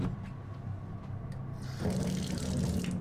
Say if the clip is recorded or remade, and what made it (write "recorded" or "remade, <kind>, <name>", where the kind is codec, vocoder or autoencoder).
recorded